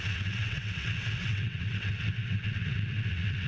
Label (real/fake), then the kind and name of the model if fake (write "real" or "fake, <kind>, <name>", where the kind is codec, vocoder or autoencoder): fake, vocoder, WaveNeXt